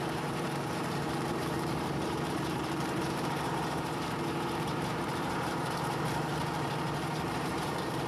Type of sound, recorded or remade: remade